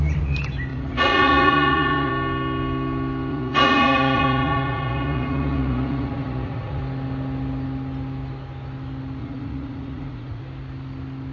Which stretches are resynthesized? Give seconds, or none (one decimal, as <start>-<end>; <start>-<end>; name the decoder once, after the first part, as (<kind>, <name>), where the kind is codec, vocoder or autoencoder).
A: 0.7-2.1 (vocoder, Vocos); 3.3-6.8; 9.2-10.4

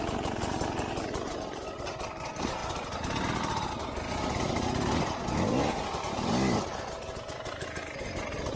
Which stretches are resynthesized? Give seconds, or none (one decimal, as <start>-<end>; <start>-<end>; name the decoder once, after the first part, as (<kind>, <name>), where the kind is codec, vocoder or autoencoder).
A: none